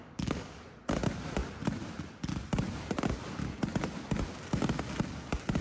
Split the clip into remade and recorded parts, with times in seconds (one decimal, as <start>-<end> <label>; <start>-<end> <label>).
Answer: 0.0-0.6 remade; 0.6-5.6 recorded